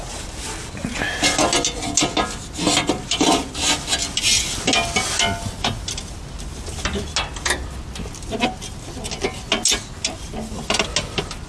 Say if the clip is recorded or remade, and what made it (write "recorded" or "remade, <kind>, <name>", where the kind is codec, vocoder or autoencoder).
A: recorded